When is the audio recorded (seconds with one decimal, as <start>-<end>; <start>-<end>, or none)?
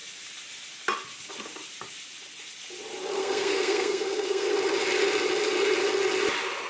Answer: 0.0-3.2; 4.5-6.7